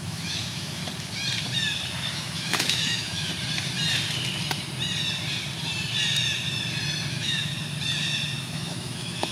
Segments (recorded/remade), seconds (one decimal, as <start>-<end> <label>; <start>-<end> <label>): 0.0-0.8 remade; 0.8-2.1 recorded; 2.1-3.3 remade; 3.3-7.1 recorded; 7.1-7.5 remade; 7.5-8.4 recorded; 8.4-9.3 remade